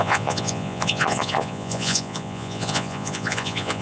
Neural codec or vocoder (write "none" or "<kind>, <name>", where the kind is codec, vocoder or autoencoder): vocoder, Vocos